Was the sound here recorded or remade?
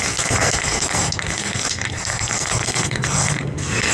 remade